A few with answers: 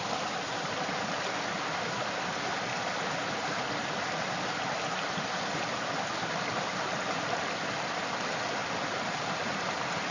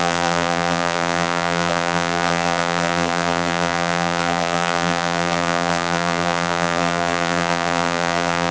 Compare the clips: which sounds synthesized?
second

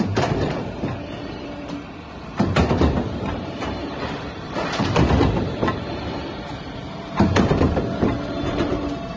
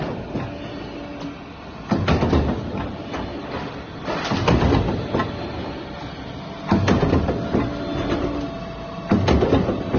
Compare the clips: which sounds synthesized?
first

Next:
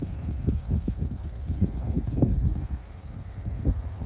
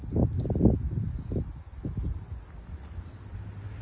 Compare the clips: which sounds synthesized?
first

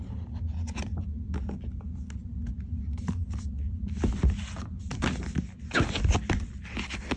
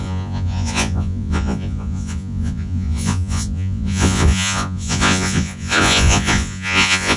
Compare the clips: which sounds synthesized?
second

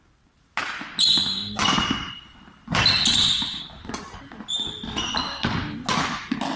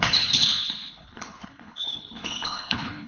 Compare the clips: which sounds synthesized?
second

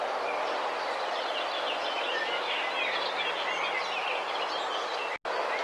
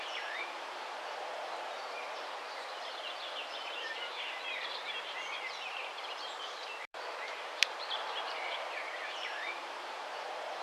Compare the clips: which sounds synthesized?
second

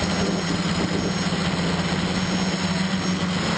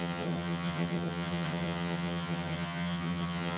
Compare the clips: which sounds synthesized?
second